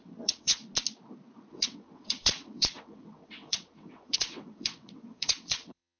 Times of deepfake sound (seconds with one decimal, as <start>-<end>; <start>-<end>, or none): 0.0-0.6; 1.5-6.0